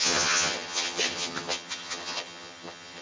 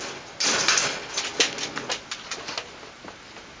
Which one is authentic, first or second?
second